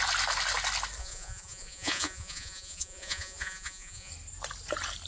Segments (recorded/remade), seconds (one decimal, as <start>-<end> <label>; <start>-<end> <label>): 0.0-1.0 recorded; 1.0-4.1 remade; 4.1-5.1 recorded